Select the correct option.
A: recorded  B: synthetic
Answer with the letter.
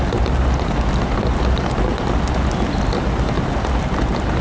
A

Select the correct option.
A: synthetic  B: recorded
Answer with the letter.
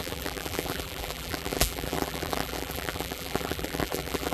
A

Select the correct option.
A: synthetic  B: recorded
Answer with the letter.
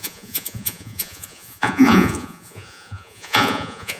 A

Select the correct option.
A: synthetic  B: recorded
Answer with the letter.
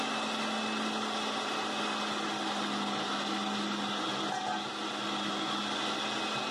B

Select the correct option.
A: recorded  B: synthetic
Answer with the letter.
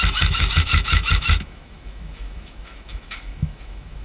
B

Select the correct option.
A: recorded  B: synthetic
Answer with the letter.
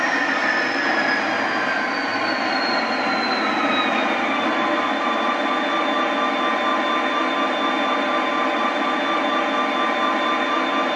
A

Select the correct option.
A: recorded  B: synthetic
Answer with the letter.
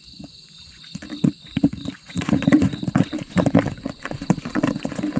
B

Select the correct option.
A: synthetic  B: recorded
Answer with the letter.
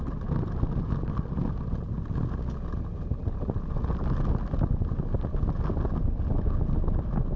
B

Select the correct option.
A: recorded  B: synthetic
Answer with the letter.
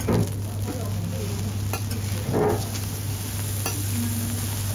A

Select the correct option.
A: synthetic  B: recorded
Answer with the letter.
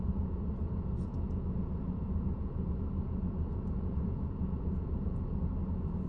A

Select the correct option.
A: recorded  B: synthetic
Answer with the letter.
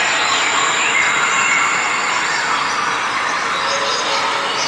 A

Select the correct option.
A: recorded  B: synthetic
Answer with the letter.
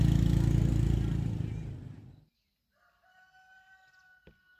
A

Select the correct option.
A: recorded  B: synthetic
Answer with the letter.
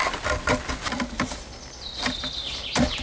A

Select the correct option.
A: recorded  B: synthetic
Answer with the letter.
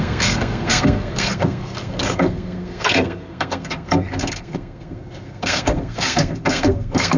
B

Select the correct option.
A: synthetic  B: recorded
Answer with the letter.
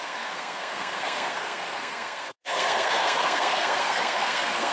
A